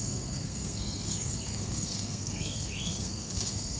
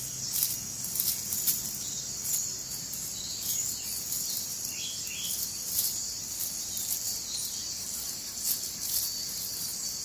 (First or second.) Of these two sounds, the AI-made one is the first